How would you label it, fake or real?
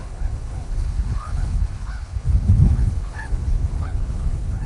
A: fake